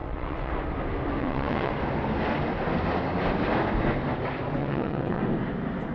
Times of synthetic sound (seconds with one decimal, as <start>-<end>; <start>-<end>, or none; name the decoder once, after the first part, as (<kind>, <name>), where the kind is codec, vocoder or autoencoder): 0.0-0.5 (vocoder, WaveNeXt); 1.2-1.7; 4.6-5.2